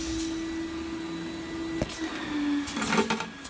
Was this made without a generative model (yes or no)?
yes